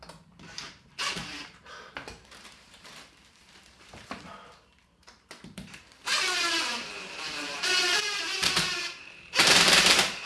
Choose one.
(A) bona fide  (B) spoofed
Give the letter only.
B